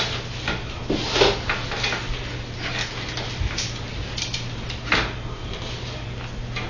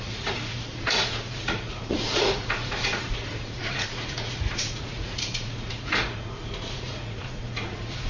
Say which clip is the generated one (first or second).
second